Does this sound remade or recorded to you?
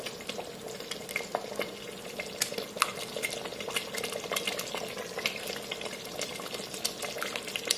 recorded